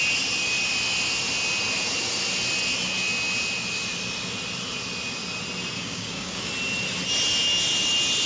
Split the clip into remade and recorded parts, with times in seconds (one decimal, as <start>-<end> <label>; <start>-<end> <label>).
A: 0.0-5.8 recorded; 5.8-6.5 remade; 6.5-8.3 recorded